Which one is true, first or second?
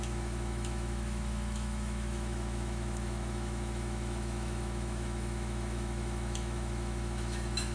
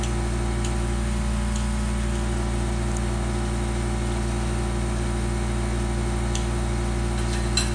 second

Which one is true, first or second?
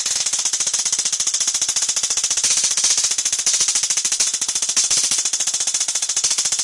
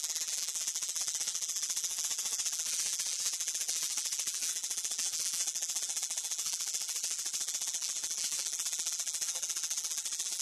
first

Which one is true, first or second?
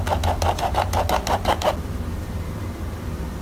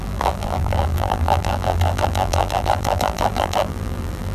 first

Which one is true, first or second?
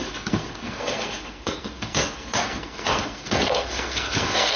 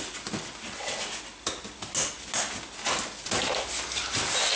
second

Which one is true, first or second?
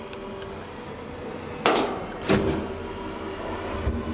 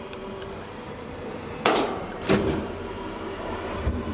first